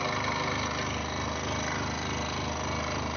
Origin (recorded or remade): recorded